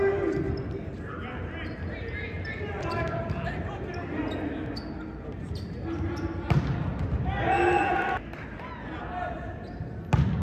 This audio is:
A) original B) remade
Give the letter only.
A